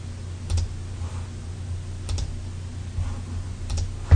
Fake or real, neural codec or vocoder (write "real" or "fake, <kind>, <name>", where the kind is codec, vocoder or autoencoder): real